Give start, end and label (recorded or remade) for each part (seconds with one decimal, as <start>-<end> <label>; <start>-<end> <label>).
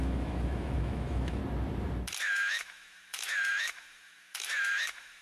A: 0.0-1.4 remade; 1.4-2.2 recorded; 2.2-5.2 remade